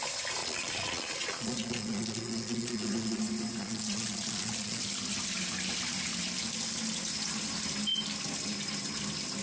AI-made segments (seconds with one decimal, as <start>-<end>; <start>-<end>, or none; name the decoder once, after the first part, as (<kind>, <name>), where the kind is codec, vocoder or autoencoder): 0.4-3.2 (vocoder, Vocos); 3.6-4.8